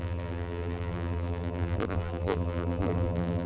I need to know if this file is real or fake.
fake